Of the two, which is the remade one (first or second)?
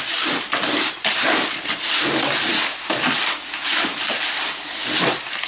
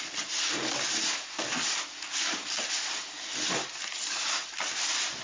first